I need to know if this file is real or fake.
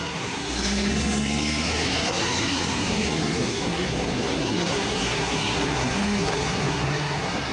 fake